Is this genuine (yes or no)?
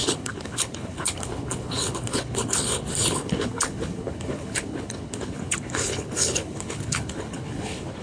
no